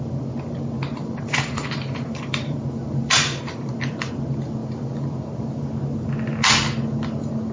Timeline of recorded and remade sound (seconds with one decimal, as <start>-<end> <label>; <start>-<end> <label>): 0.0-1.0 recorded; 1.0-4.1 remade; 4.1-7.5 recorded